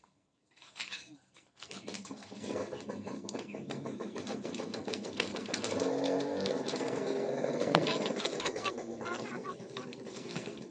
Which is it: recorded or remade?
remade